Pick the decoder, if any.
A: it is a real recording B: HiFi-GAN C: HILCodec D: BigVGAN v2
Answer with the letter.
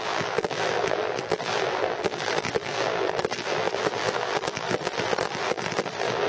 D